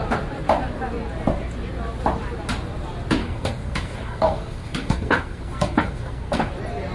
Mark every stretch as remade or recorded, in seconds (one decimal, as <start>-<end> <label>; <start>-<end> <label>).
0.0-3.2 recorded; 3.2-6.5 remade; 6.5-6.9 recorded